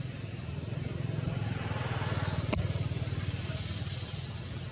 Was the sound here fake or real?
real